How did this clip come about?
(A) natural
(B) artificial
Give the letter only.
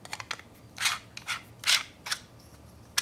A